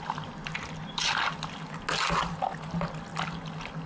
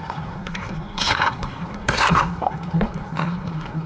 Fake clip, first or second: second